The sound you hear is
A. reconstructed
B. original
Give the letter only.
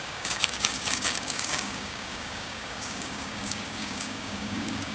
A